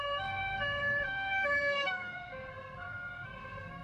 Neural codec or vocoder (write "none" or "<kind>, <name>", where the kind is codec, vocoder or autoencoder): codec, SNAC